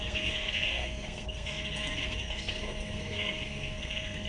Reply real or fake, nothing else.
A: fake